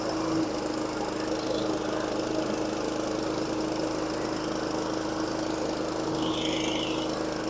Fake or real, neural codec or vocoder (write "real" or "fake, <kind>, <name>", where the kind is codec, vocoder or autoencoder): real